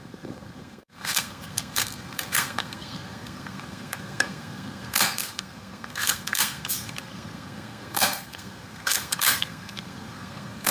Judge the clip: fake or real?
fake